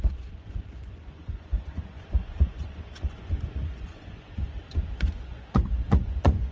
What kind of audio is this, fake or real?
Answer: fake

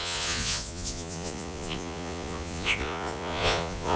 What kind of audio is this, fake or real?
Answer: fake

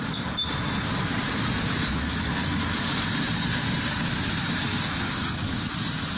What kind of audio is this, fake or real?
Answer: real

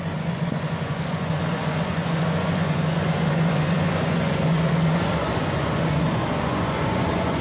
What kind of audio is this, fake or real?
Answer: fake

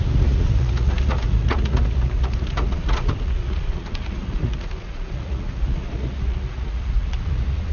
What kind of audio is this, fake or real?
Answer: fake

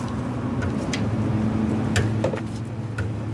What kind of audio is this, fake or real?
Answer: real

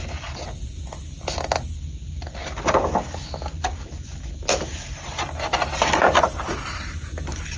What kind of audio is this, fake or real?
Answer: real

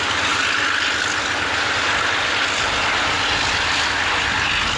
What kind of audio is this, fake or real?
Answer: real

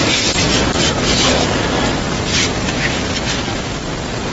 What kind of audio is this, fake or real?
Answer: real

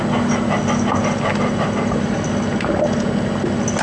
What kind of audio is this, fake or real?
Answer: real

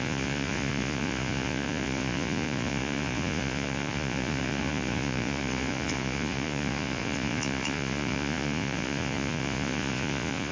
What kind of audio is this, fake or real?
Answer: fake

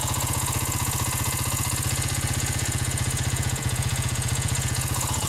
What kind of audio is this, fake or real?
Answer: fake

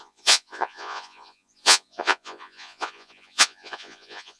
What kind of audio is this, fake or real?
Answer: fake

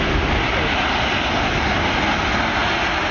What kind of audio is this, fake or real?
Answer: real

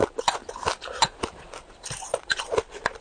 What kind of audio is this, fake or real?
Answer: real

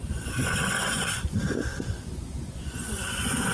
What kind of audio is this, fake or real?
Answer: fake